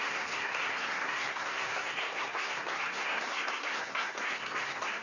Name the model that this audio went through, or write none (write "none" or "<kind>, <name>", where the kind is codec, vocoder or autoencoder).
codec, SNAC